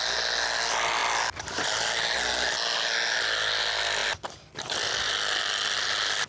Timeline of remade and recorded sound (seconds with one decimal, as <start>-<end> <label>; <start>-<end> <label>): 0.0-6.3 recorded